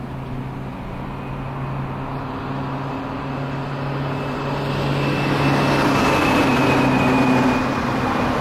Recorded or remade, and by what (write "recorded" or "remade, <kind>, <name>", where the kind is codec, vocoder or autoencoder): recorded